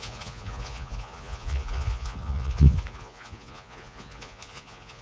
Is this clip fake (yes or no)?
yes